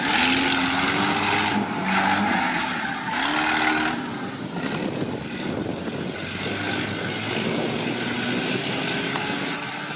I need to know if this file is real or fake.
real